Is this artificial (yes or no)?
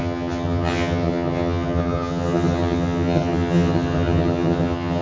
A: yes